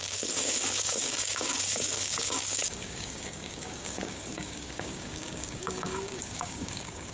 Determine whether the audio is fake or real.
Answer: fake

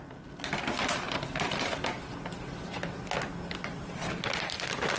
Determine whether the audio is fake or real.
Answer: real